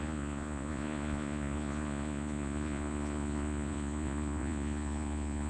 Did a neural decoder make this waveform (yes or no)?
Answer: yes